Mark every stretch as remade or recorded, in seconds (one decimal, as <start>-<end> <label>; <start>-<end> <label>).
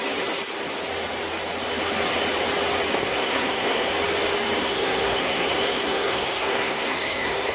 0.0-2.9 recorded; 2.9-3.9 remade; 3.9-4.6 recorded; 4.6-7.5 remade